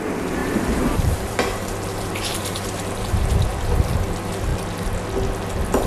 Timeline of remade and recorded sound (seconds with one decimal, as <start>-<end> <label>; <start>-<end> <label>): 0.0-0.4 recorded; 0.4-3.7 remade; 3.7-5.9 recorded

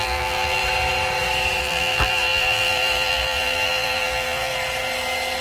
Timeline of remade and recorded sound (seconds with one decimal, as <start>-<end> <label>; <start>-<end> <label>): 0.0-0.6 remade; 0.6-1.6 recorded; 1.6-4.5 remade; 4.5-5.4 recorded

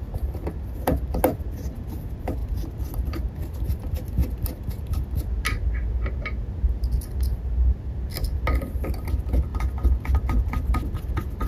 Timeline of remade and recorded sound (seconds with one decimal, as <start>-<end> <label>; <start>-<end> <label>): 0.0-2.4 recorded; 2.4-3.2 remade; 3.2-9.5 recorded; 9.5-11.1 remade; 11.1-11.5 recorded